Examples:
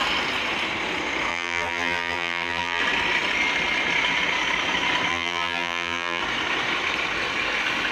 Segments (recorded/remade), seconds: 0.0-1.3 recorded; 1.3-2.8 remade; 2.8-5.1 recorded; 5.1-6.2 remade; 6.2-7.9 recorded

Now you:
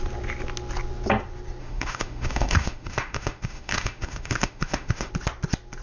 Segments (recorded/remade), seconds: 0.0-1.6 recorded; 1.6-5.1 remade; 5.1-5.8 recorded

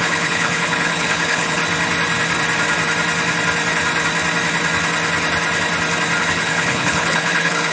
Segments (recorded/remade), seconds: 0.0-1.6 remade; 1.6-6.2 recorded; 6.2-7.7 remade

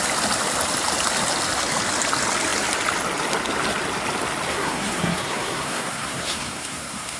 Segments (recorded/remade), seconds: 0.0-4.5 recorded; 4.5-7.2 remade

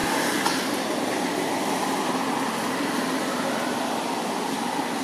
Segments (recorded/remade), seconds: 0.0-3.0 recorded; 3.0-5.0 remade

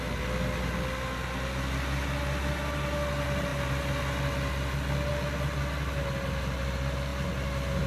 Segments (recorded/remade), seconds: 0.0-7.9 recorded

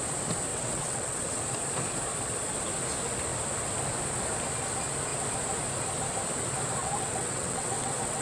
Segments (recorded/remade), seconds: 0.0-0.5 recorded; 0.5-1.4 remade; 1.4-6.8 recorded; 6.8-8.2 remade